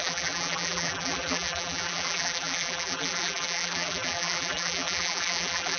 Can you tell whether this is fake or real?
fake